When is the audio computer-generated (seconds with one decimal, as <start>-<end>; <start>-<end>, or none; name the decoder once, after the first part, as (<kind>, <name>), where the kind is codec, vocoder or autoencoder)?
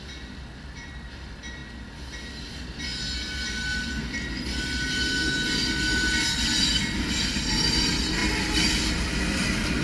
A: none